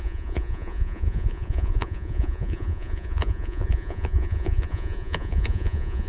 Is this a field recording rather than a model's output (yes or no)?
no